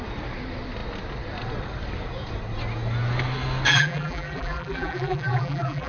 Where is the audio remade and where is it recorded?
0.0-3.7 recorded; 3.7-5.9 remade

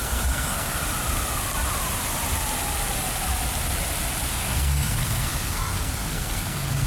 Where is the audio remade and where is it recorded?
0.0-0.8 remade; 0.8-4.3 recorded; 4.3-6.9 remade

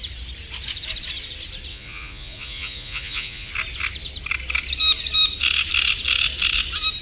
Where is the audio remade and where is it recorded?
0.0-1.7 recorded; 1.7-3.5 remade; 3.5-7.0 recorded

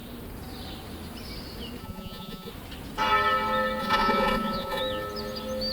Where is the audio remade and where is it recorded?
0.0-1.8 recorded; 1.8-2.5 remade; 2.5-3.8 recorded; 3.8-4.8 remade; 4.8-5.7 recorded

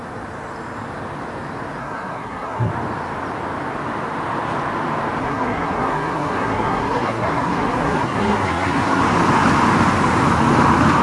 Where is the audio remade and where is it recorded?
0.0-1.8 recorded; 1.8-2.7 remade; 2.7-5.2 recorded; 5.2-9.0 remade; 9.0-11.0 recorded

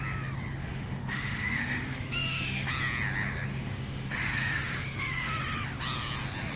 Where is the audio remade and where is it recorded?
0.0-0.6 recorded; 0.6-2.7 remade; 2.7-3.5 recorded; 3.5-5.4 remade; 5.4-6.6 recorded

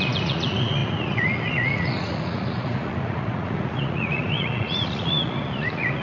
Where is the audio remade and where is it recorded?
0.0-6.0 remade

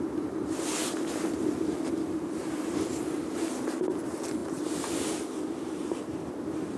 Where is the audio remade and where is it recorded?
0.0-6.8 recorded